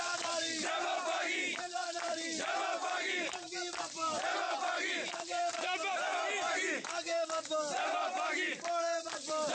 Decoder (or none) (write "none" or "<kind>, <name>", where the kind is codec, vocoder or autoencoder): vocoder, BigVGAN v2